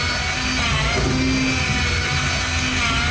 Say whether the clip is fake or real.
real